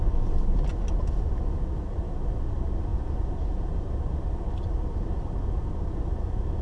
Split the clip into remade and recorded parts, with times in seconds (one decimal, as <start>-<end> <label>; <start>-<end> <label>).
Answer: 0.0-6.6 recorded